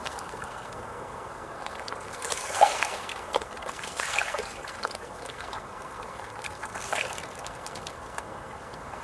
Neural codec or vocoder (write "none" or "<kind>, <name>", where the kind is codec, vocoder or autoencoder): codec, SNAC